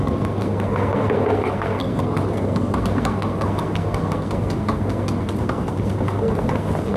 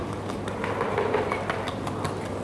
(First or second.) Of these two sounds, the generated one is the first